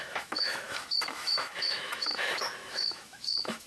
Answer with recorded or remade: remade